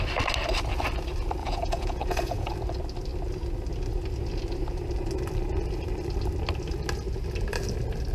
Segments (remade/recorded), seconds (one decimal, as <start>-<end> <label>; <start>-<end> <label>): 0.0-1.4 recorded; 1.4-2.5 remade; 2.5-8.1 recorded